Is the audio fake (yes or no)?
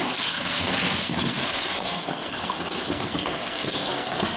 yes